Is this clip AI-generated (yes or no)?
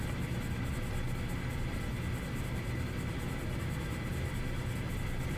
yes